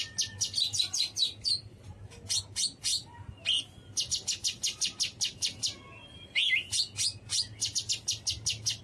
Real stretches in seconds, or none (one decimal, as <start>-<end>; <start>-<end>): 0.0-8.8